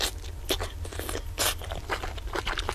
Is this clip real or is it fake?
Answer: real